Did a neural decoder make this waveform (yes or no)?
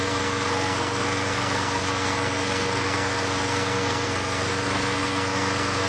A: yes